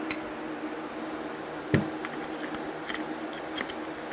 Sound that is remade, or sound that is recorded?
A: recorded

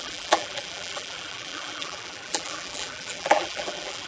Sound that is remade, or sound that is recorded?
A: remade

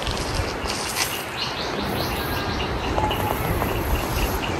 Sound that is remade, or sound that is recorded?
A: remade